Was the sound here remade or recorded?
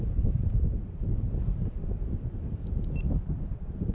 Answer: recorded